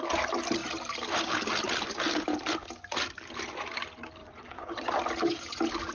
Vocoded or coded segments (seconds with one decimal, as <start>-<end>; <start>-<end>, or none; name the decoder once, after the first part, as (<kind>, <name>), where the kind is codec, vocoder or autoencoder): 4.2-4.9 (vocoder, Vocos)